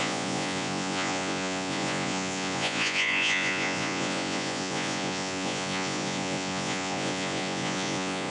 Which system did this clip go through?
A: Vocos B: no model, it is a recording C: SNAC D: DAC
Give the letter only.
A